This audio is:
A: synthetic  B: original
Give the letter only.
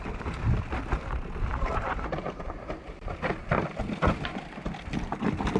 A